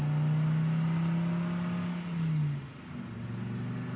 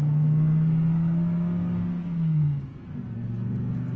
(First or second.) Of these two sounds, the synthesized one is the second